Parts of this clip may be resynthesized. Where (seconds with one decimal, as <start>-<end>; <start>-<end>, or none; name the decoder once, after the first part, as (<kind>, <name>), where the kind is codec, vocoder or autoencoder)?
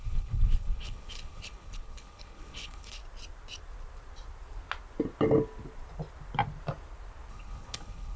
0.0-3.0 (codec, HILCodec); 7.3-8.2